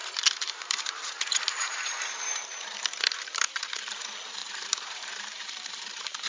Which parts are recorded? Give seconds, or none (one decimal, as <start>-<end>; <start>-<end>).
3.8-4.4